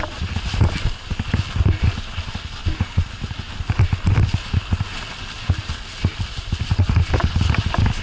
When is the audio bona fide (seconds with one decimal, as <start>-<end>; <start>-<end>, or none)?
0.0-8.0